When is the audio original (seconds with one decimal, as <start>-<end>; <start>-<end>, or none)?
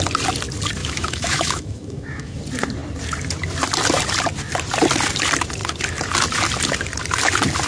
0.0-0.8; 2.4-7.7